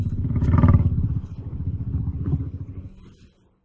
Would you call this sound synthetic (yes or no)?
yes